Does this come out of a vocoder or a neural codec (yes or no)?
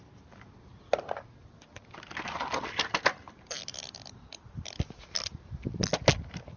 no